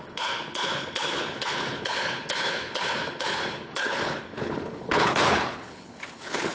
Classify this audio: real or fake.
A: fake